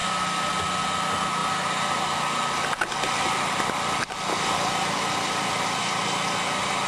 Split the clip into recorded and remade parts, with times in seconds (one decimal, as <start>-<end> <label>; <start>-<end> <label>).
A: 0.0-0.6 remade; 0.6-1.4 recorded; 1.4-5.5 remade; 5.5-6.9 recorded